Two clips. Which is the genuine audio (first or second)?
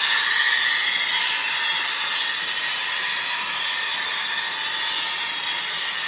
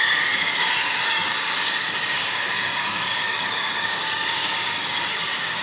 first